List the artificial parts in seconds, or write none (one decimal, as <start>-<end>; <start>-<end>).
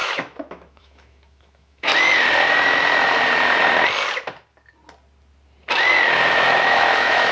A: 0.0-1.9; 6.3-7.3